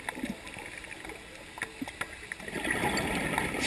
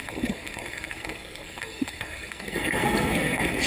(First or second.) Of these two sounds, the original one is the first